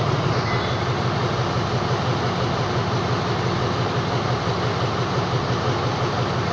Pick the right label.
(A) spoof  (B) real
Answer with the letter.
B